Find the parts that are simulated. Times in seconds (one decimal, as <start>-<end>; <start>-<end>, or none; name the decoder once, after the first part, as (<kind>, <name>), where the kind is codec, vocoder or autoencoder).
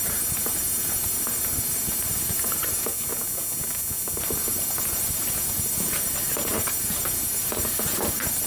0.0-2.9 (vocoder, BigVGAN v2); 4.2-8.5